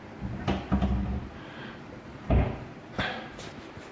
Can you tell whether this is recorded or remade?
recorded